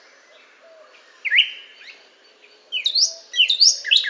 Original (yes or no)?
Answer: yes